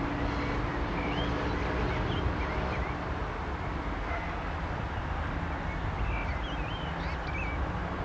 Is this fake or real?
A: real